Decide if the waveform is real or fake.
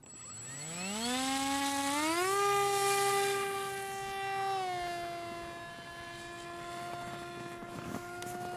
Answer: real